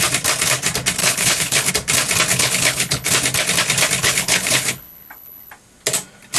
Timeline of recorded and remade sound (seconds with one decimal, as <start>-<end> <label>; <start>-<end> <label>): 0.0-1.0 recorded; 1.0-1.7 remade; 1.7-2.3 recorded; 2.3-3.1 remade; 3.1-4.0 recorded; 4.0-5.5 remade; 5.5-6.4 recorded